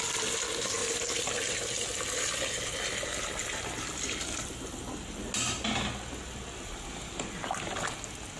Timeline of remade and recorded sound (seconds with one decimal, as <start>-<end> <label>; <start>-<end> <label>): 0.0-0.8 recorded; 0.8-1.8 remade; 1.8-8.4 recorded